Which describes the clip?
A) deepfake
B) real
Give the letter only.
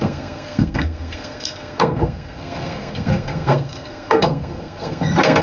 A